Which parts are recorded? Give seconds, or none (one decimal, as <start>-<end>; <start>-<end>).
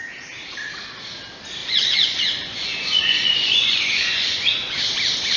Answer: 0.0-1.6; 4.8-5.4